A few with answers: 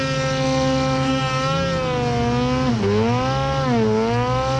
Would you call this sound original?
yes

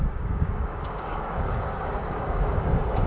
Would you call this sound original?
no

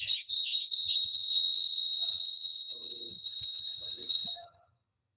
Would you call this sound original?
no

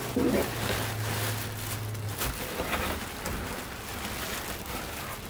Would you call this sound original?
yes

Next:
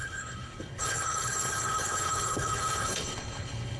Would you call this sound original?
no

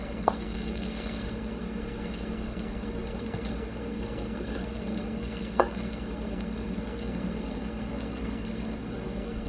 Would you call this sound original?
no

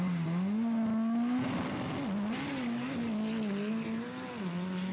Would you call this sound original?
yes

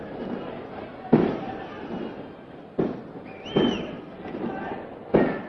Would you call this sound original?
yes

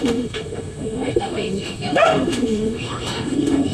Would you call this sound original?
no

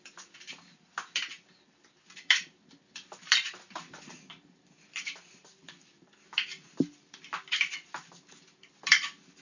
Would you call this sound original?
no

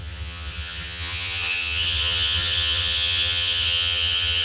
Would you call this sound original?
no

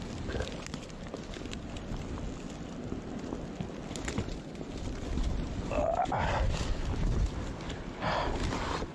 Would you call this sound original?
yes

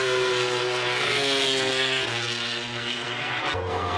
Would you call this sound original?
no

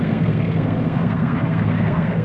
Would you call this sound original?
no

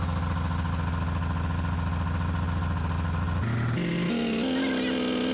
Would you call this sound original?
yes